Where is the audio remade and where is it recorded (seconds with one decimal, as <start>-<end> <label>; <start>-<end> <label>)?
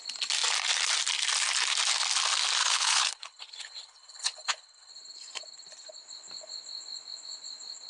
0.0-2.6 recorded; 2.6-4.9 remade; 4.9-7.9 recorded